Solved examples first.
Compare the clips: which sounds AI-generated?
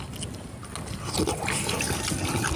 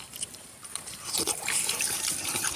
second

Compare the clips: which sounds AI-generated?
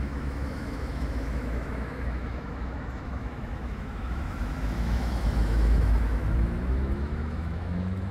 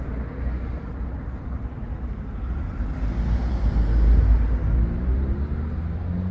first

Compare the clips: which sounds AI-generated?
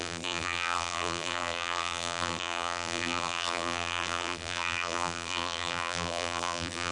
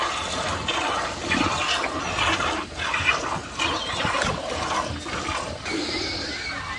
first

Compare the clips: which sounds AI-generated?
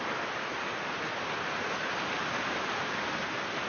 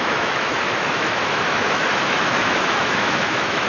second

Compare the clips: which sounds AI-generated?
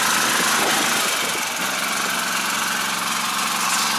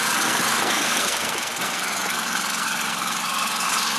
second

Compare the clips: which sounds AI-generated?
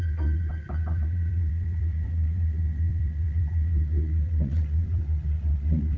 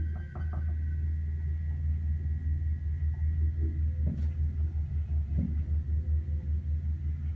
first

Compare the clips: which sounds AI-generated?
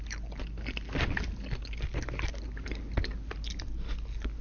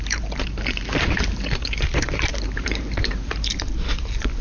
second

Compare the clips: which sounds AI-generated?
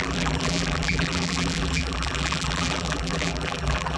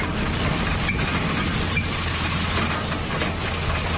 first